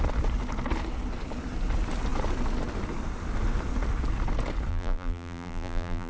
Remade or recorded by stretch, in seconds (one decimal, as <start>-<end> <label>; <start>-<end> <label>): 0.0-4.7 recorded; 4.7-6.1 remade